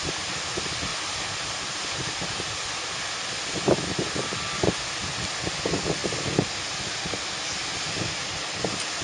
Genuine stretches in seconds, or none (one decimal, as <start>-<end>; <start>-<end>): 0.0-9.0